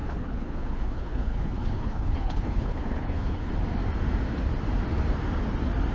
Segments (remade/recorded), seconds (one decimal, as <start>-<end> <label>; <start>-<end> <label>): 0.0-3.5 remade; 3.5-5.9 recorded